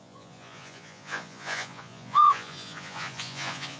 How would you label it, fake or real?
fake